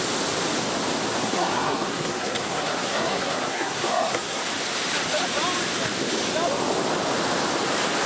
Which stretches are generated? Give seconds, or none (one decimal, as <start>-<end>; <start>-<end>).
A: 1.2-4.4